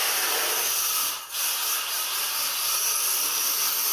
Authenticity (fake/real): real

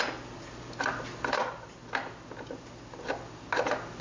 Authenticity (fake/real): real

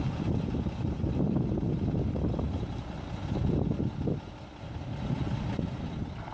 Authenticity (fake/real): real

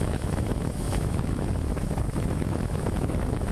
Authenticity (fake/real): fake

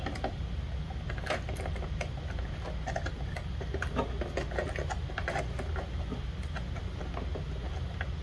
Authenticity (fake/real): real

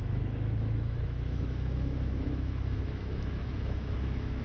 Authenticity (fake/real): fake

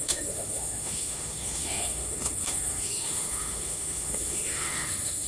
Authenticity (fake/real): fake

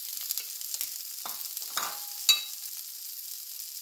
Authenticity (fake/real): real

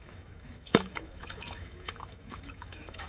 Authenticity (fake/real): fake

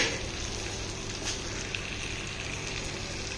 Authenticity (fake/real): real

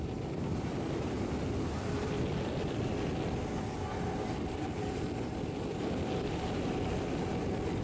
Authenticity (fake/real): real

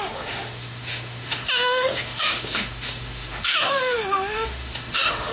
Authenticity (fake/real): fake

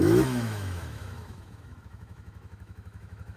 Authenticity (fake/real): fake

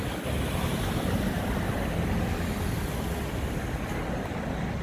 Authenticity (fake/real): real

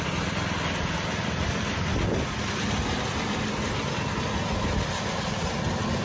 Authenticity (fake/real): real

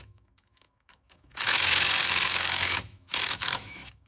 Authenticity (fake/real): fake